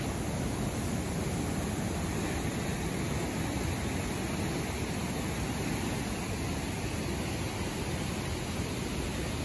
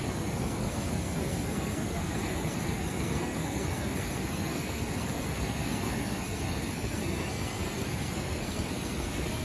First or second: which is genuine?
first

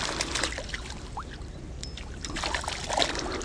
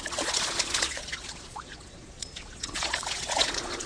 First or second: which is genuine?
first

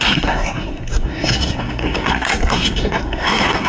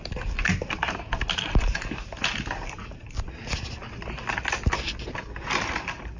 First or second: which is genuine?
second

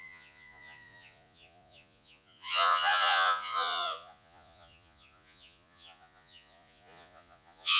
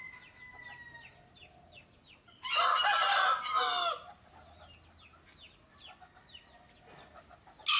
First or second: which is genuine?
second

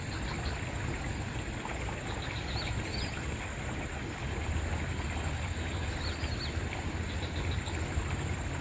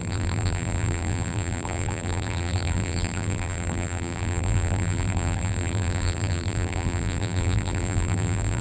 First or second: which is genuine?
first